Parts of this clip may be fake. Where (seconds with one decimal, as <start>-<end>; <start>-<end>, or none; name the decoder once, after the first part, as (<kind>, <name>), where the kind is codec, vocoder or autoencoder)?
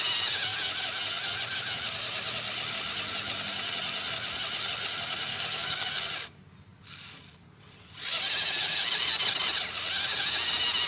5.3-5.9 (codec, DAC)